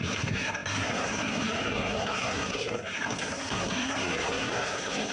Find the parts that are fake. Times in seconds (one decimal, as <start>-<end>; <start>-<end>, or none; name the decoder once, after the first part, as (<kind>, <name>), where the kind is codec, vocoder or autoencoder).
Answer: 0.0-5.1 (codec, SNAC)